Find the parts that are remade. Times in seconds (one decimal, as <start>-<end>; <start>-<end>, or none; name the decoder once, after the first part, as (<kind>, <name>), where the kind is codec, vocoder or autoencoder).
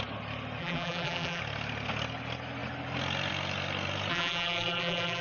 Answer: 0.6-1.4 (vocoder, BigVGAN v2); 4.1-5.2